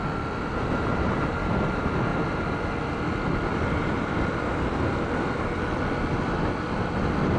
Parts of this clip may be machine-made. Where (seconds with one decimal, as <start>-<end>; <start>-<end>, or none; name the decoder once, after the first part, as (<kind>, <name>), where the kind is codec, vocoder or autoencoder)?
0.9-1.5 (vocoder, BigVGAN v2); 2.1-2.8; 3.5-4.3